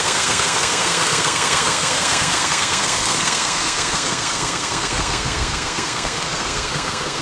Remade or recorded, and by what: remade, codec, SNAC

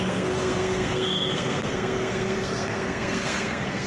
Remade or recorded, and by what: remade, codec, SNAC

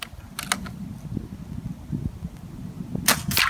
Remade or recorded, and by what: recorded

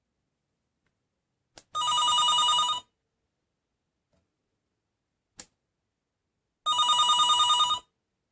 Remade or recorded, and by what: recorded